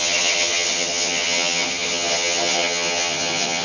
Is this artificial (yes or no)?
yes